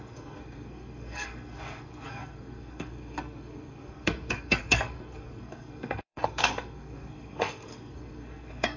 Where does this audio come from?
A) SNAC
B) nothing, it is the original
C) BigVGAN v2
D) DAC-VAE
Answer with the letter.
A